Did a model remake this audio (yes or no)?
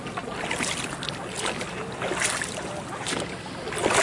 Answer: no